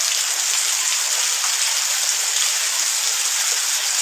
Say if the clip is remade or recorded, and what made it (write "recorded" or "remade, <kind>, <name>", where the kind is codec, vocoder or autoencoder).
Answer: recorded